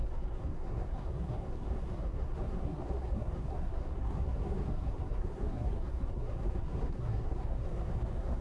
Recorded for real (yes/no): no